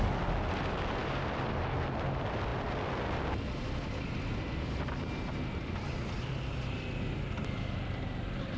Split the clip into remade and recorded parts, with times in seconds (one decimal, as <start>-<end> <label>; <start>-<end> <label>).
0.0-8.6 recorded

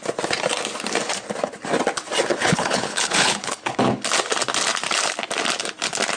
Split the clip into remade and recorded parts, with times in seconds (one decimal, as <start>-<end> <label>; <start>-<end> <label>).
0.0-2.3 recorded; 2.3-3.9 remade; 3.9-6.2 recorded

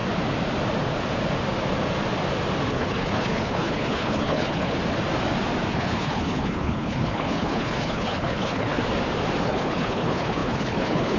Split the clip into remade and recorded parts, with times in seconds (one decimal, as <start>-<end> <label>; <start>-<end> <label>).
0.0-2.7 recorded; 2.7-4.8 remade; 4.8-5.7 recorded; 5.7-8.8 remade; 8.8-9.4 recorded; 9.4-11.2 remade